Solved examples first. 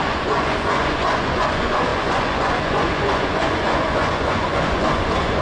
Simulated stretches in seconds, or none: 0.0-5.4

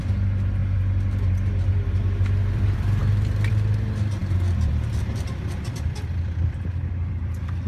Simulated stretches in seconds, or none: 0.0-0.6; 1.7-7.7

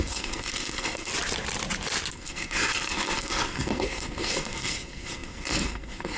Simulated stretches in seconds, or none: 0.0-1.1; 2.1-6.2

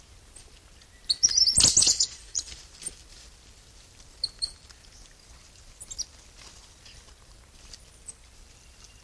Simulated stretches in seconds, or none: 1.8-2.5

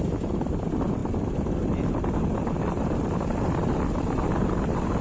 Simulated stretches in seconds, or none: 0.0-5.0